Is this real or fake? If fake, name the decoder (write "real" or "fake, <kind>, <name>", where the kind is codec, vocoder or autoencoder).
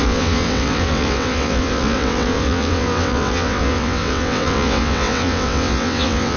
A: fake, vocoder, WaveNeXt